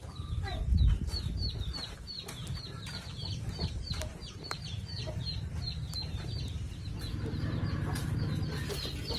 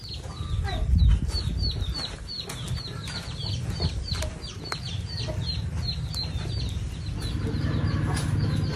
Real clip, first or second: second